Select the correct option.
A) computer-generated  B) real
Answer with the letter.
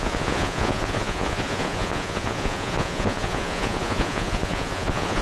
A